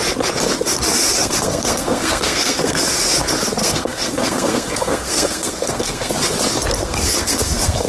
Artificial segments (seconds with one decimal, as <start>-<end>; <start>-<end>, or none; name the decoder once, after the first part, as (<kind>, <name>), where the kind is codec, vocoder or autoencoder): 1.2-2.8 (codec, SNAC); 3.6-6.1; 6.8-7.9